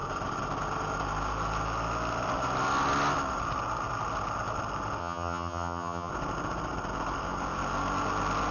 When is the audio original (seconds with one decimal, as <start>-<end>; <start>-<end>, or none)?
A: 0.0-5.0; 6.1-8.5